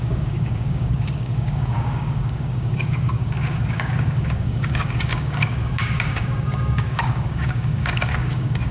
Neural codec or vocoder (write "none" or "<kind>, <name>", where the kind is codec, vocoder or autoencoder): codec, DAC